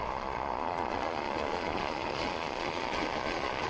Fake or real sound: fake